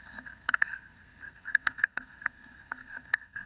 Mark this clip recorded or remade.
remade